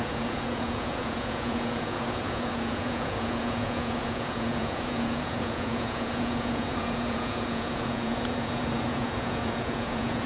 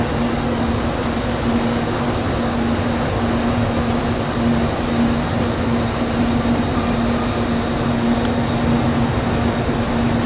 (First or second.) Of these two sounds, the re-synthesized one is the first